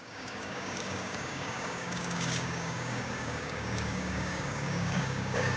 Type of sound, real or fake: fake